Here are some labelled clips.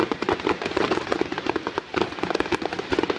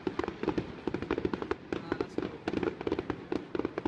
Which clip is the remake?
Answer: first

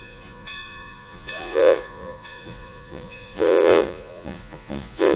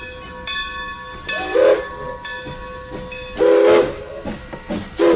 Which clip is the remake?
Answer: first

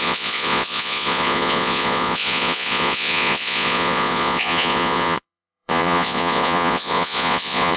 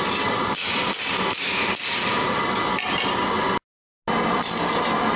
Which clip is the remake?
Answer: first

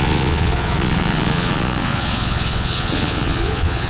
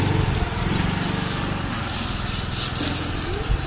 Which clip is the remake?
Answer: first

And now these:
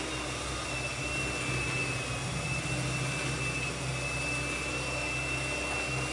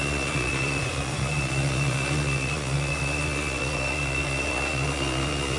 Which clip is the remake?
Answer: second